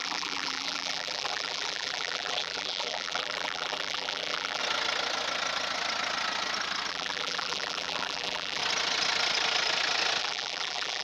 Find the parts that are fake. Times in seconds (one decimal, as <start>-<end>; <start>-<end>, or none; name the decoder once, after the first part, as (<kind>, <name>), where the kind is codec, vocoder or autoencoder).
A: 0.0-4.6 (vocoder, BigVGAN v2); 6.9-8.6; 10.2-11.0